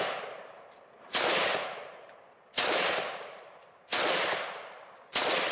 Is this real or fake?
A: fake